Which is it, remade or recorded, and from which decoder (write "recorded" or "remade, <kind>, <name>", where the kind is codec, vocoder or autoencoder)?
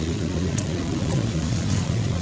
remade, vocoder, Vocos